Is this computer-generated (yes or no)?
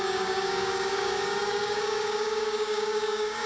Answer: yes